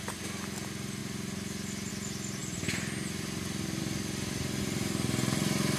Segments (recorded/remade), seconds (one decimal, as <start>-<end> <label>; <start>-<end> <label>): 0.0-5.8 recorded